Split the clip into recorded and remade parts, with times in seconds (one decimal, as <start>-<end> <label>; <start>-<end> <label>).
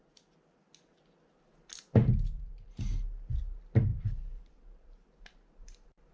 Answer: 0.0-2.0 recorded; 2.0-2.8 remade; 2.8-3.9 recorded; 3.9-6.1 remade